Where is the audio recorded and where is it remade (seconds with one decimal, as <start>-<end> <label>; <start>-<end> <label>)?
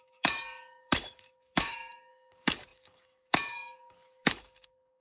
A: 0.0-5.0 remade